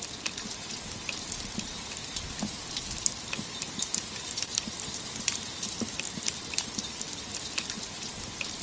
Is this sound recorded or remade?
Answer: recorded